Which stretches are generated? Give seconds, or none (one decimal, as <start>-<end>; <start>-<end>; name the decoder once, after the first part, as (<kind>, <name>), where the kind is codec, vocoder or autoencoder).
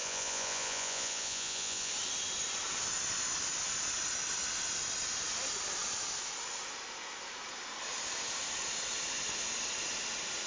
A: 0.0-1.9 (vocoder, Vocos)